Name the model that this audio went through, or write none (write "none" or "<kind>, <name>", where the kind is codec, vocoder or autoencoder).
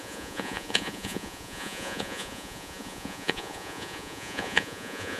vocoder, Vocos